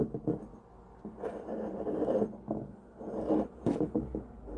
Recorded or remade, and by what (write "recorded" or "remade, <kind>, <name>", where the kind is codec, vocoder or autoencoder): recorded